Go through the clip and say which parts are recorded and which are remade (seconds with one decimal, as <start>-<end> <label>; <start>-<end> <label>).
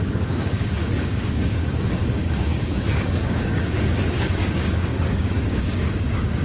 0.0-6.4 remade